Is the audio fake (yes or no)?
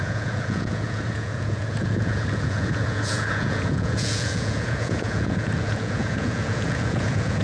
yes